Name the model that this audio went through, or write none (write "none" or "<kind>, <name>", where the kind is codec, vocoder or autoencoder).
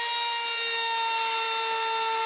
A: none